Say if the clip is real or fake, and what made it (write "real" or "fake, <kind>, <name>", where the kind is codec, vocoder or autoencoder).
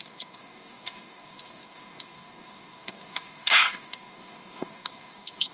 fake, codec, DAC